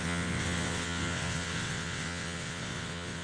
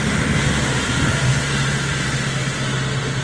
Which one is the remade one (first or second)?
first